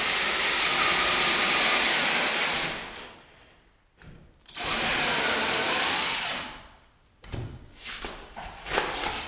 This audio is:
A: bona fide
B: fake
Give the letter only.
A